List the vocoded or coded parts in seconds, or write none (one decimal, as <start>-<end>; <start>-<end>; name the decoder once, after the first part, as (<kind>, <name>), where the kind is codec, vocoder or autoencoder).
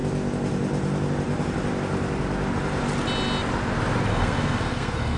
4.1-5.2 (codec, SNAC)